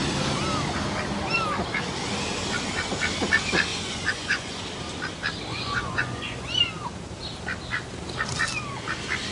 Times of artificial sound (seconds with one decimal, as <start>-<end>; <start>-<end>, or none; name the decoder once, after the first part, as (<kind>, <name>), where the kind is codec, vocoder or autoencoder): 3.7-4.6 (vocoder, Vocos); 5.5-6.6